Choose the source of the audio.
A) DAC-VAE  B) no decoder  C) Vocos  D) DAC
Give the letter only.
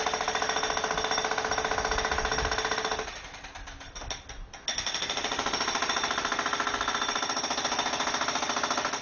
B